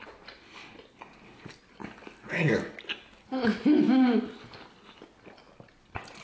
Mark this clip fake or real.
real